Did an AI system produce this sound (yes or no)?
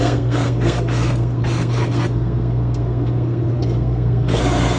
yes